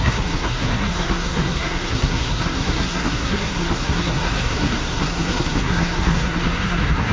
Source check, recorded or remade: remade